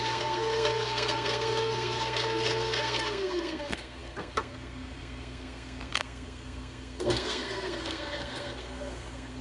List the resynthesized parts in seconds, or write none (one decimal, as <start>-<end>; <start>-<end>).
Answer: 0.0-9.4